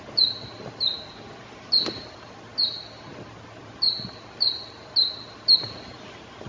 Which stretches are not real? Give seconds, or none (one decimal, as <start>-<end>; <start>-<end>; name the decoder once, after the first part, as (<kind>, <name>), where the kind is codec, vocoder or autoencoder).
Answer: none